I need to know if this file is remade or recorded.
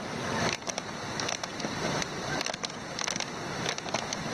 recorded